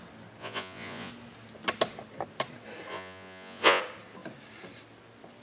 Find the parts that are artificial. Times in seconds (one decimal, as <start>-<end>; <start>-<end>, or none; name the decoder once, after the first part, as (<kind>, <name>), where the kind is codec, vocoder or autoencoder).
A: 0.4-1.1 (vocoder, Vocos); 2.9-3.8